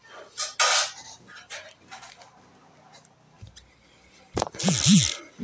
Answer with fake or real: real